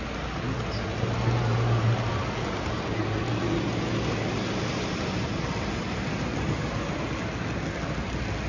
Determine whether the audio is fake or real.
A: real